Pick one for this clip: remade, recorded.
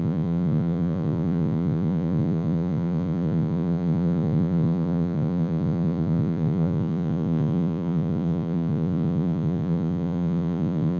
remade